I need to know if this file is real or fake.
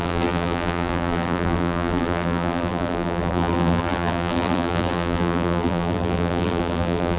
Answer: fake